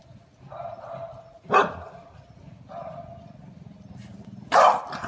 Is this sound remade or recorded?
recorded